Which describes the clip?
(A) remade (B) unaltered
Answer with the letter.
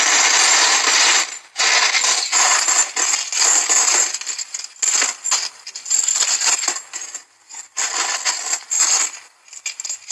B